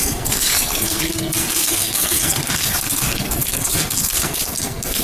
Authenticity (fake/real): fake